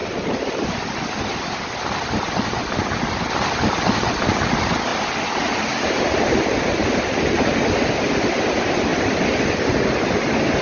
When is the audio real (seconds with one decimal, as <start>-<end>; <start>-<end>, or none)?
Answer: 0.0-10.6